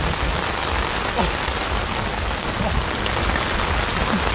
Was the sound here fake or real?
real